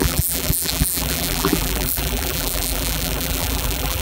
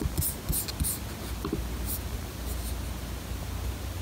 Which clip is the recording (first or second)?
second